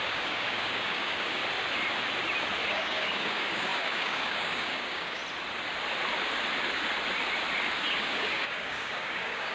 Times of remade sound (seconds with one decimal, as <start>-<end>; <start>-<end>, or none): 0.0-1.4; 2.7-5.2; 7.9-9.5